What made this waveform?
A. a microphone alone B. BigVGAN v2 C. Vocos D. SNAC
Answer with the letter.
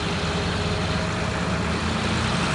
A